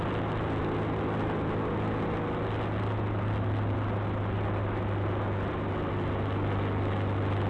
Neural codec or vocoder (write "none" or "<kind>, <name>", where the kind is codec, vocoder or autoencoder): none